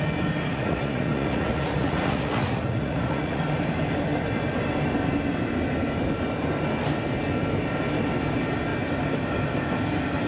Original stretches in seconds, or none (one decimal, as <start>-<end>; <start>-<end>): 0.0-0.5; 3.4-10.3